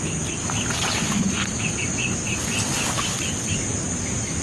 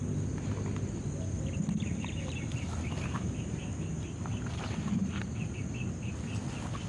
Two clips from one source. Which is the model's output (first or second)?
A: second